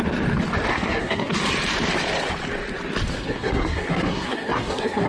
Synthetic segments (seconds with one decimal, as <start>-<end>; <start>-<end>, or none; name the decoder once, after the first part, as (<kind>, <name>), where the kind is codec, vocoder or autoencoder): 0.7-1.4 (codec, SNAC); 3.1-5.1